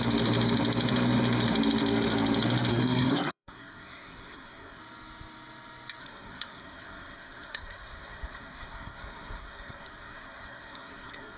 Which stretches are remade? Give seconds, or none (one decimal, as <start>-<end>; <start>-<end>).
2.7-4.8; 6.0-11.4